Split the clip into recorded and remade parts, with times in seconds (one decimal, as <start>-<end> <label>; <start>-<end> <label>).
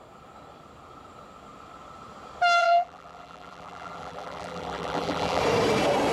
0.0-2.6 recorded; 2.6-5.4 remade; 5.4-6.1 recorded